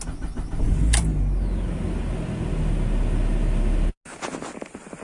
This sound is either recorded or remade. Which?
recorded